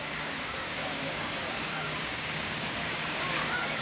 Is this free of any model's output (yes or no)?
no